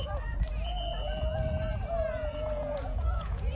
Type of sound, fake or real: fake